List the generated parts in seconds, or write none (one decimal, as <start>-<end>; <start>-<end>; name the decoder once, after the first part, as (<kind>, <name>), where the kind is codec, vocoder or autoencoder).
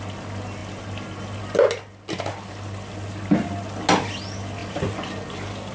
none